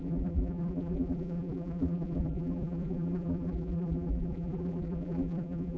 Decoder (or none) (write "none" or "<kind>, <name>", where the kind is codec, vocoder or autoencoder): vocoder, BigVGAN v2